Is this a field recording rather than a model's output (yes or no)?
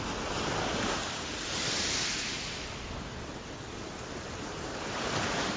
yes